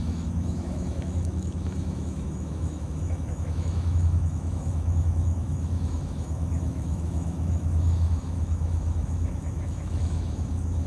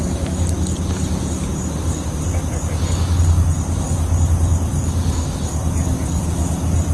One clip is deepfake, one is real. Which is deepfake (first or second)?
first